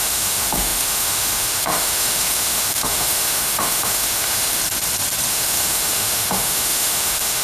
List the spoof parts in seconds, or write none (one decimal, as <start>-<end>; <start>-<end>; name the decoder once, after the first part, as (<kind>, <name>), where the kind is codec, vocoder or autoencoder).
0.0-4.6 (autoencoder, DAC-VAE); 5.3-7.4